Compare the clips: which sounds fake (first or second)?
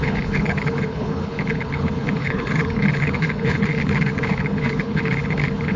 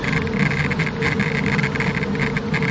first